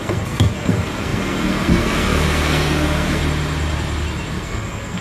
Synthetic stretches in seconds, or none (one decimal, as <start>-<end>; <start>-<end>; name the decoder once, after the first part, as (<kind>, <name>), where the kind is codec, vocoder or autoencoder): 0.0-3.2 (codec, SNAC); 4.3-5.0

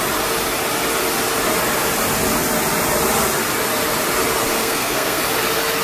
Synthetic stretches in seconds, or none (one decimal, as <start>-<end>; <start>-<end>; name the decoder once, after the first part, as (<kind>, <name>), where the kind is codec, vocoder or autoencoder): 4.6-5.2 (codec, SNAC)

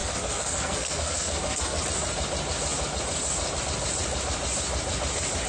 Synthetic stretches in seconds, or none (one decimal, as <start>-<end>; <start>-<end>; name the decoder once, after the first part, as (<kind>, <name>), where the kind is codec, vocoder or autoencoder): 0.0-1.8 (codec, SNAC)

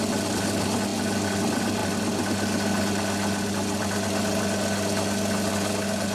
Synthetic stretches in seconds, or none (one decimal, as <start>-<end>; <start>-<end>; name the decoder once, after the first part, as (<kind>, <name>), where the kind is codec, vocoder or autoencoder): none

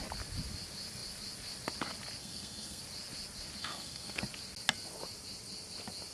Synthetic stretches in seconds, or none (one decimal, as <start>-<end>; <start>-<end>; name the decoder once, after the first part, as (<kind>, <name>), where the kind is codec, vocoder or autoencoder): 2.2-2.8 (codec, SNAC); 3.6-4.2

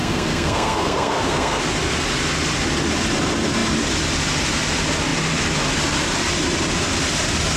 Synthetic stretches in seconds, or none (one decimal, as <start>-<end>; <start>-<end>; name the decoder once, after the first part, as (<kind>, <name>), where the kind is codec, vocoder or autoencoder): 0.0-1.6 (codec, SNAC)